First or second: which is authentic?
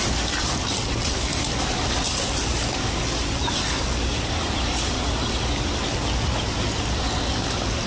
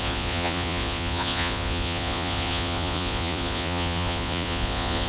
first